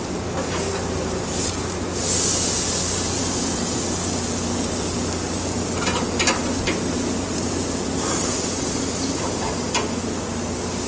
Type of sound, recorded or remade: recorded